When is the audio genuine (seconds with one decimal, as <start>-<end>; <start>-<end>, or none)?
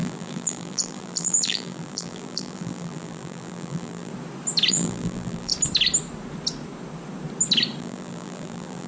4.1-4.7; 5.5-7.8